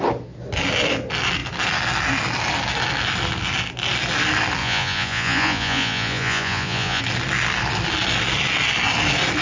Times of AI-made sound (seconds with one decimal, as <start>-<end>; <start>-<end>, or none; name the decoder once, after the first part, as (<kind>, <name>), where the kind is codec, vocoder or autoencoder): 4.6-7.0 (vocoder, Vocos)